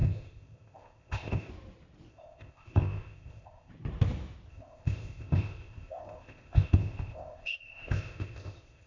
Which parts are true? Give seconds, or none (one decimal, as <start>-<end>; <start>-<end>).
1.5-2.1; 3.7-4.5